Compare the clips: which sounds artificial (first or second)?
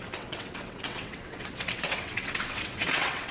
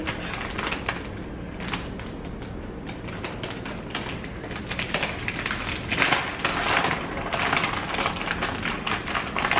first